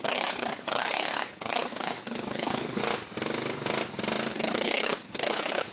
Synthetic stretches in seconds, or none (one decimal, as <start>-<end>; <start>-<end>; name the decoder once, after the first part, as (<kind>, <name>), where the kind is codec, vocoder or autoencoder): 0.0-2.8 (codec, HILCodec); 4.3-5.7